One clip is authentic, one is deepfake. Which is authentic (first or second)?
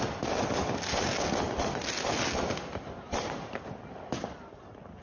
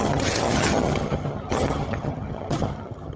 first